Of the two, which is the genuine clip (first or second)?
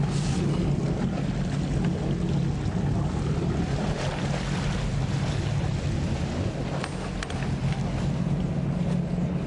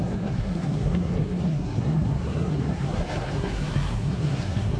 first